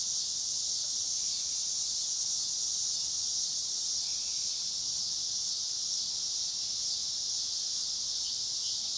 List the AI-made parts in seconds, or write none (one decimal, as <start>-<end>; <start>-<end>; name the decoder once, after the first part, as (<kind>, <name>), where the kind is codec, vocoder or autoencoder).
none